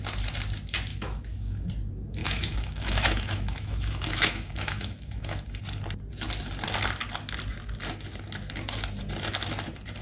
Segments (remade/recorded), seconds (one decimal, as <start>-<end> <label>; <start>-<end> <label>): 0.0-0.9 recorded; 0.9-1.7 remade; 1.7-2.2 recorded; 2.2-5.6 remade; 5.6-10.0 recorded

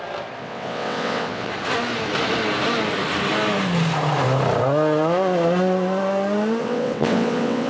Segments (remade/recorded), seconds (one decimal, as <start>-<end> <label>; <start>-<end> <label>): 0.0-0.4 recorded; 0.4-1.5 remade; 1.5-6.6 recorded; 6.6-7.7 remade

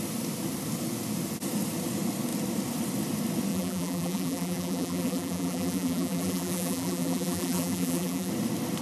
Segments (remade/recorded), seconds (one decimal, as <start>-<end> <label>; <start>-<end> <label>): 0.0-3.5 recorded; 3.5-8.3 remade; 8.3-8.8 recorded

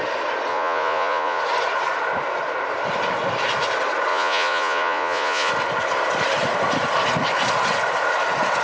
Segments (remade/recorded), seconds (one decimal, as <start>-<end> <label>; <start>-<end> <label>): 0.0-0.5 recorded; 0.5-1.4 remade; 1.4-4.1 recorded; 4.1-5.5 remade; 5.5-8.6 recorded

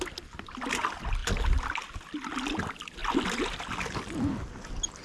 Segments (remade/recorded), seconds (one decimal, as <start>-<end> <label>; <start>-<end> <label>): 0.0-5.0 recorded

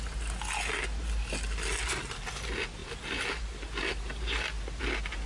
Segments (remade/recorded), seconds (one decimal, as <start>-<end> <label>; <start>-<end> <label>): 0.0-5.3 recorded